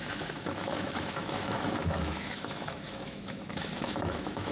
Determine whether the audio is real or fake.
fake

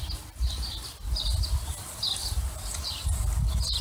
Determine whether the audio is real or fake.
real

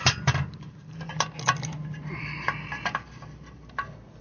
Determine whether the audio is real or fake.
real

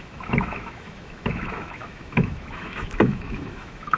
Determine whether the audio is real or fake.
fake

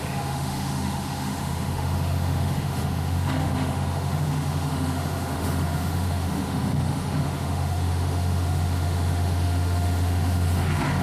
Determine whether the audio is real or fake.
fake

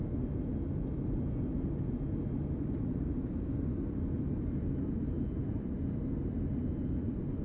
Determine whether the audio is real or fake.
real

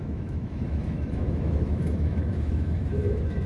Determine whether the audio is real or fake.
fake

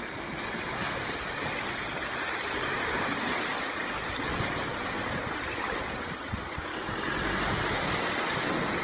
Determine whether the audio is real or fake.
real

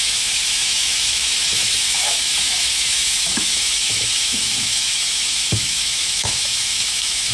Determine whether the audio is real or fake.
fake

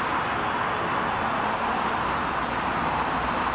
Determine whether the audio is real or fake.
real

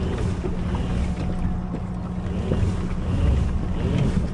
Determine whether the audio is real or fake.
real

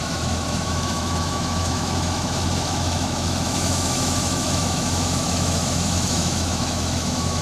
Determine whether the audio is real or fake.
fake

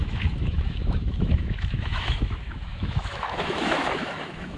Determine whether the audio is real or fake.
fake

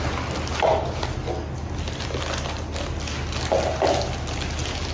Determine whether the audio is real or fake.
real